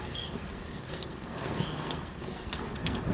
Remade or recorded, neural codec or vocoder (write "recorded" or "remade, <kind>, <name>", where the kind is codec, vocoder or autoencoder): remade, codec, SNAC